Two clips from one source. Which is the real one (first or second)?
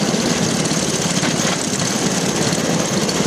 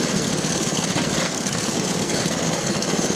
first